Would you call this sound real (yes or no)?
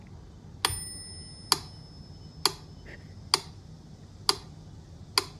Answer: yes